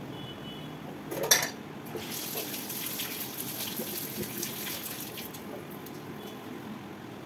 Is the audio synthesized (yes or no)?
no